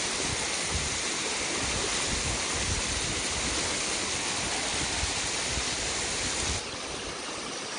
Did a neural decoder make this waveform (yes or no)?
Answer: no